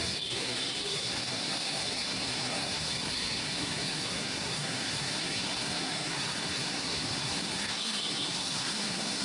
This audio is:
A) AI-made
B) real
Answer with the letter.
A